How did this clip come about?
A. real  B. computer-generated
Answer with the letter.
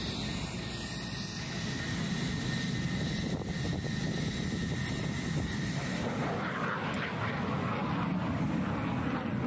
A